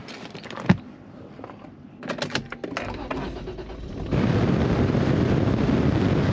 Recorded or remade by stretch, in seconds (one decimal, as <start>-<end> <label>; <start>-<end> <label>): 0.0-6.3 recorded

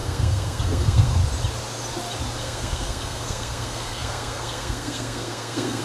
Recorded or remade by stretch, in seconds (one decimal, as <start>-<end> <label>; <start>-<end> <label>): 0.0-1.2 remade; 1.2-2.4 recorded; 2.4-5.8 remade

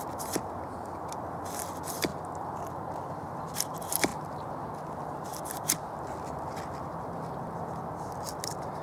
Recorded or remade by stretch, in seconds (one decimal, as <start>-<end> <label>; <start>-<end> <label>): 0.0-8.8 recorded

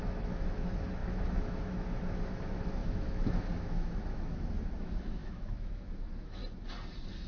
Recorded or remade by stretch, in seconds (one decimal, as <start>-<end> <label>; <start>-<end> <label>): 0.0-6.4 remade; 6.4-7.3 recorded